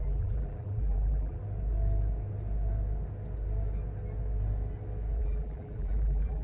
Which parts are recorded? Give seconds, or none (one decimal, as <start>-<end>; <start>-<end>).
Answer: 1.4-5.2